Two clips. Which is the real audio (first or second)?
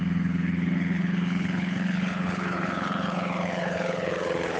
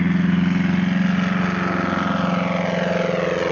second